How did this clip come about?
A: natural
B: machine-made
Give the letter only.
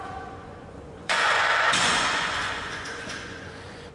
B